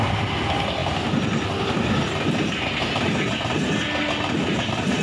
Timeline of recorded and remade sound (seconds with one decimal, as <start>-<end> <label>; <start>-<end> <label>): 0.0-5.0 recorded